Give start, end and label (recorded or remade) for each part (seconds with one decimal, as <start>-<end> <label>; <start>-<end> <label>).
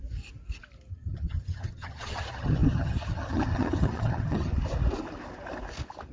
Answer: 0.0-0.9 recorded; 0.9-4.5 remade; 4.5-6.1 recorded